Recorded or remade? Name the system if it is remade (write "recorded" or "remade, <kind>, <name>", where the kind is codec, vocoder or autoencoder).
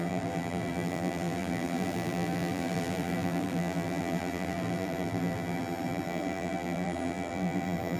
remade, vocoder, BigVGAN v2